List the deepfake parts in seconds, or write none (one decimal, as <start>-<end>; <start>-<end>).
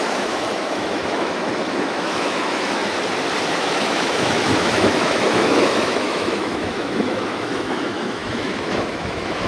0.0-2.8; 3.5-9.5